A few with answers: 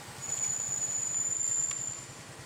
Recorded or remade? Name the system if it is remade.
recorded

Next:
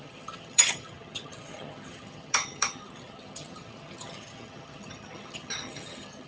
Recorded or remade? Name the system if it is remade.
remade, vocoder, HiFi-GAN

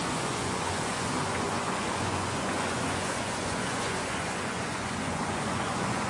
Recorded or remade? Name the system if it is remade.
remade, vocoder, Vocos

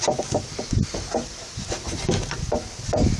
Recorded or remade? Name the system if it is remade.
recorded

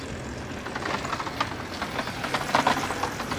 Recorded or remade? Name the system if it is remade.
recorded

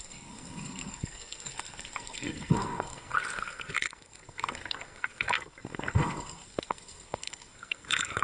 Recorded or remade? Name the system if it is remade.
remade, codec, SNAC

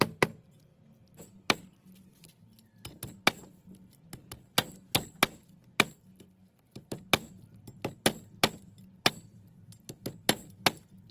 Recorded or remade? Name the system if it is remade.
recorded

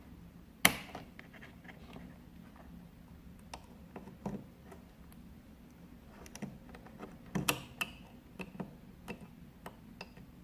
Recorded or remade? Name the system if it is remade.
recorded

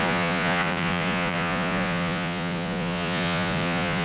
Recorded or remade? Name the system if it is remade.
remade, vocoder, Vocos